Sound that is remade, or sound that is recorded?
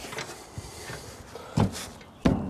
recorded